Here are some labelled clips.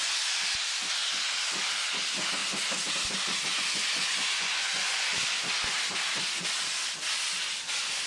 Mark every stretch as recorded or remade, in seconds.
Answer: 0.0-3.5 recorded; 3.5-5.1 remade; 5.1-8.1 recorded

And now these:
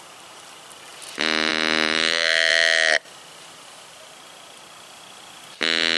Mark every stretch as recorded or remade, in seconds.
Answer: 0.0-0.9 remade; 0.9-1.5 recorded; 1.5-2.5 remade; 2.5-3.9 recorded; 3.9-6.0 remade